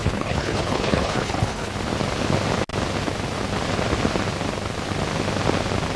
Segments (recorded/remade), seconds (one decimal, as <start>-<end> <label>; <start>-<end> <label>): 0.0-1.7 remade; 1.7-6.0 recorded